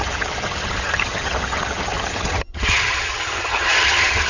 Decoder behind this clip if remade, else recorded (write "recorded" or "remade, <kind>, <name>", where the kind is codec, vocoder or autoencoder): remade, vocoder, HiFi-GAN